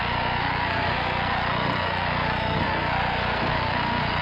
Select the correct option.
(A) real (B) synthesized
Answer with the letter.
B